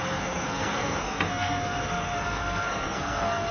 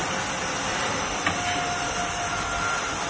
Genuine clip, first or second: second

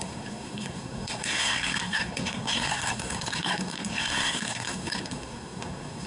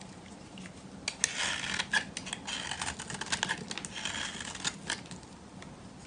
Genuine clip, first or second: second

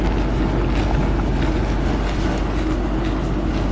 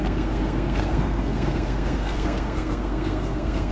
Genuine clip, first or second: first